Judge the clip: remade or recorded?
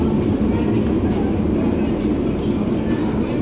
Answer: recorded